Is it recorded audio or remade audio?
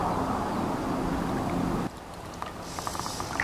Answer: recorded